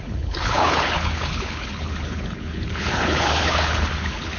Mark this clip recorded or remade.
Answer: remade